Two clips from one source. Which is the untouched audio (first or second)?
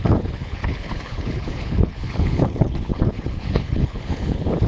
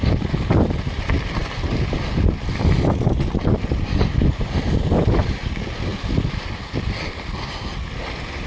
second